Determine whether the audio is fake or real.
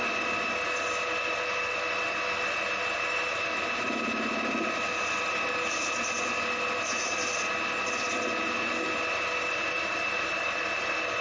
real